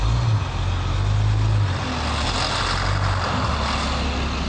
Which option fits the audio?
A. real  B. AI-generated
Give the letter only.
A